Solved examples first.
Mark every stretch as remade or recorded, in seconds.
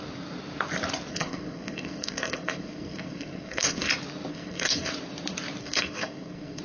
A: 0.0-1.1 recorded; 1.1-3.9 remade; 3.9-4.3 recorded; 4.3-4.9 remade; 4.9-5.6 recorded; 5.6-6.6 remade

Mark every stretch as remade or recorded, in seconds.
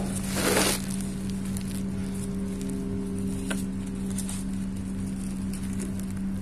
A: 0.0-6.4 recorded